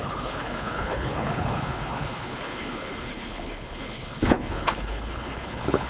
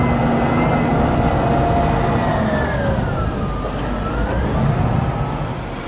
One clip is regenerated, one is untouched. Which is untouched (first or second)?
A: second